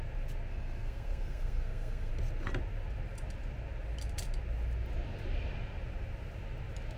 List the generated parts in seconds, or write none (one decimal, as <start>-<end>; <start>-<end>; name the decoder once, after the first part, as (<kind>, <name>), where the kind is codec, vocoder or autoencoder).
0.5-2.1 (codec, SNAC)